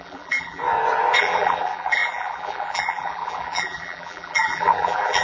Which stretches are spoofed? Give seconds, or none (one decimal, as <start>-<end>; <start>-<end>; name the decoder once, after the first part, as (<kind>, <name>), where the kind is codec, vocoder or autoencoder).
0.0-0.6 (vocoder, BigVGAN v2); 1.2-5.2